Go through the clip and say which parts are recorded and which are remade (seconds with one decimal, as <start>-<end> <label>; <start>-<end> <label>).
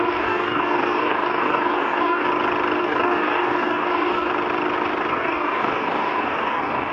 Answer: 0.0-2.3 remade; 2.3-2.8 recorded; 2.8-4.3 remade; 4.3-5.1 recorded; 5.1-6.9 remade